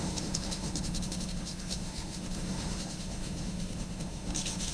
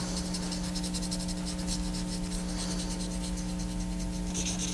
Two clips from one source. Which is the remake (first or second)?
first